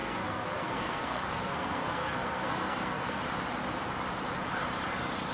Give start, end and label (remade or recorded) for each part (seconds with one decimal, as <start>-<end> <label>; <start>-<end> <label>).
0.0-3.2 remade; 3.2-5.3 recorded